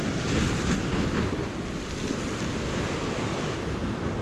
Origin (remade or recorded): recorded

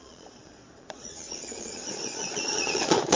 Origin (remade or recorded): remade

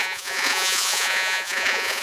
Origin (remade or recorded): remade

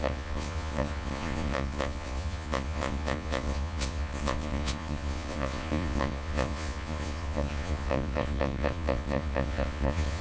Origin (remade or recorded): remade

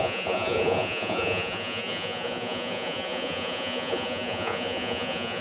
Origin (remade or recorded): remade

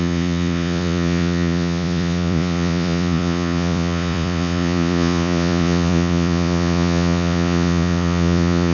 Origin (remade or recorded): remade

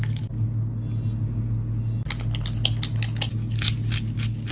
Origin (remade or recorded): recorded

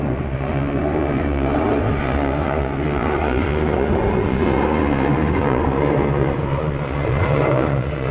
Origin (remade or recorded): remade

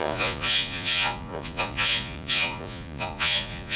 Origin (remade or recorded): remade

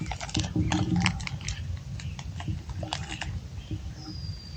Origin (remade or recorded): recorded